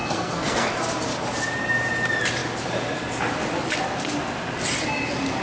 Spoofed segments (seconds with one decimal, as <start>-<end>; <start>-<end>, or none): 0.0-0.7